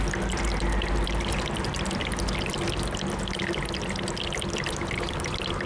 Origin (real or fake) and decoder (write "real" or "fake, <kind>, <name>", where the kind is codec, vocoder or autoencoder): real